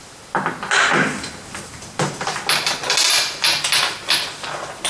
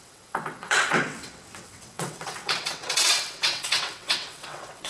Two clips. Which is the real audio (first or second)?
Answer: first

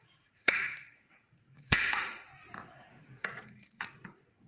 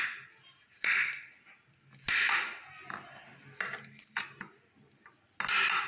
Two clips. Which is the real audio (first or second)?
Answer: second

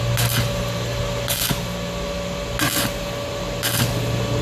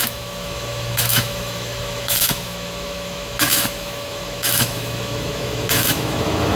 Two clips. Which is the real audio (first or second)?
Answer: first